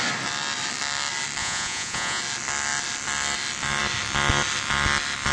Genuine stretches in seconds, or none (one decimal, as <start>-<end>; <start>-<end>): 0.0-1.4; 2.2-5.3